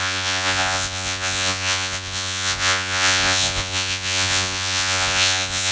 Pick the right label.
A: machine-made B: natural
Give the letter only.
A